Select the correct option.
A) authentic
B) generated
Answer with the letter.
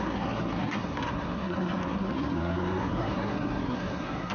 B